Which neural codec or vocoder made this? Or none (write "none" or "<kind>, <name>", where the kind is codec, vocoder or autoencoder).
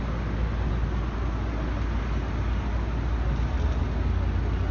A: none